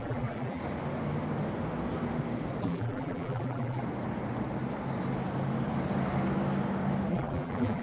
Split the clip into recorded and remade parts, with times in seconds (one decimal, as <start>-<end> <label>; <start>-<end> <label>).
0.0-0.6 remade; 0.6-2.6 recorded; 2.6-3.8 remade; 3.8-7.1 recorded; 7.1-7.8 remade